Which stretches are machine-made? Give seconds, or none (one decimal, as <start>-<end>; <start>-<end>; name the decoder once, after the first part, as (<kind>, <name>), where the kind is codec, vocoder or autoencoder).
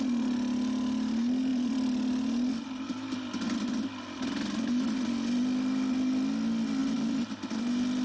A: 1.5-2.1 (vocoder, BigVGAN v2); 6.8-7.3